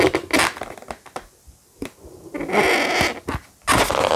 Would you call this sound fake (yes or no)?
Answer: no